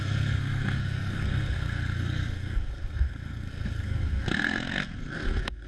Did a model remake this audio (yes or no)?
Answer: yes